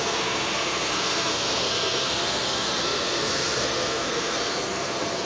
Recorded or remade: remade